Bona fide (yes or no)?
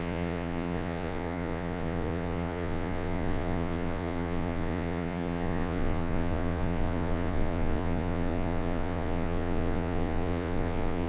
no